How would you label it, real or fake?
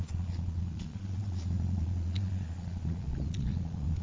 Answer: fake